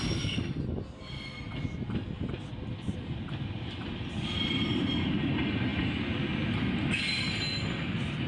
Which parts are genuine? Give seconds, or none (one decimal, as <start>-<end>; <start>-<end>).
0.0-8.3